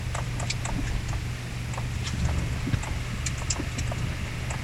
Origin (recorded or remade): recorded